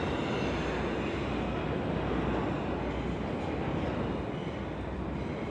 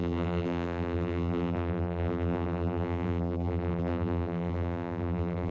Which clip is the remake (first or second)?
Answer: second